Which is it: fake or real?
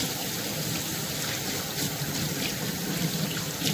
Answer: real